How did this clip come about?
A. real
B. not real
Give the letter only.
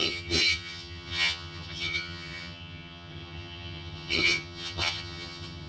B